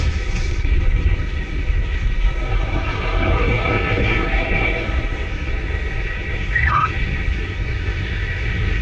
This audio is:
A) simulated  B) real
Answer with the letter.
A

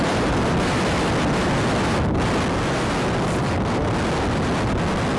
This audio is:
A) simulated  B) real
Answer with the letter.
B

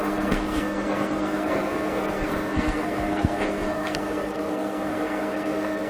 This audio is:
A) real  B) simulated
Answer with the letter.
B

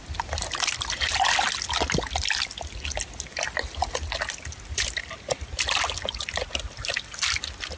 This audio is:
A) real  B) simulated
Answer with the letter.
A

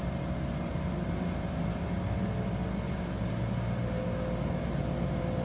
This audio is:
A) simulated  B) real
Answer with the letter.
B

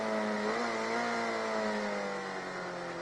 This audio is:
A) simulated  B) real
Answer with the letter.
B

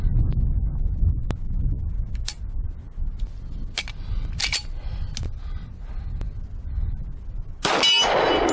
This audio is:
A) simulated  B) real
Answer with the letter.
B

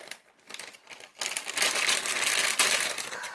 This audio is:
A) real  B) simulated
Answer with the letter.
A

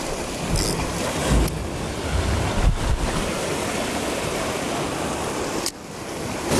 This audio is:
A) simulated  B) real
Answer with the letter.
B